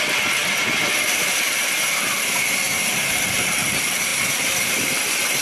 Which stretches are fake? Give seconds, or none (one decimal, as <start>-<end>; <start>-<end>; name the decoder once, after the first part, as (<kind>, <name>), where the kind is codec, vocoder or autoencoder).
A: none